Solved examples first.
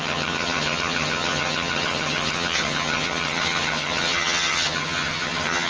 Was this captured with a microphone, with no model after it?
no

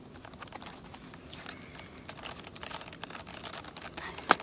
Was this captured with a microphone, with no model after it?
yes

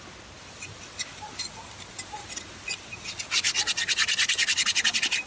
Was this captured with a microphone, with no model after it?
yes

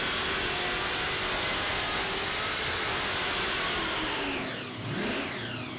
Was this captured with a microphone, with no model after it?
yes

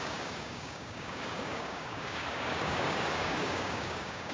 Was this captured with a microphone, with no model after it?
no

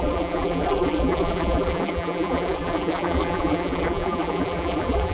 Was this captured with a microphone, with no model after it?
no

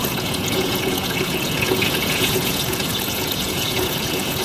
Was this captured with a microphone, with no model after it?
no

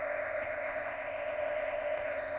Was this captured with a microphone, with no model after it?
no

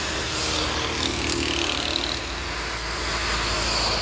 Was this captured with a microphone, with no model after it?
yes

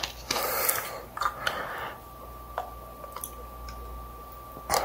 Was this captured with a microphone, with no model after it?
yes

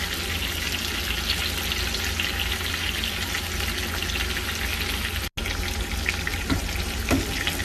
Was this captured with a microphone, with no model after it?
yes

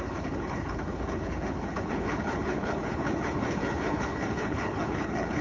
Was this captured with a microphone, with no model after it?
no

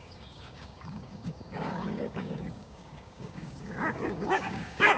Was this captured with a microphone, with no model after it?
no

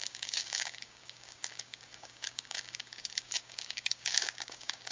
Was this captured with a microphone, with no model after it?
no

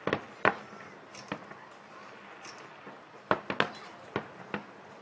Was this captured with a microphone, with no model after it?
yes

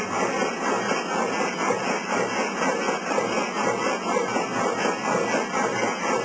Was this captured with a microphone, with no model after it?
yes